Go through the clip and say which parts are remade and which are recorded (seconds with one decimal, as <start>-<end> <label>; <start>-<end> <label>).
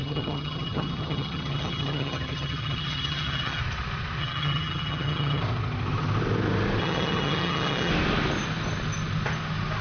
0.0-3.6 remade; 3.6-4.2 recorded; 4.2-5.4 remade; 5.4-6.8 recorded; 6.8-7.9 remade; 7.9-9.8 recorded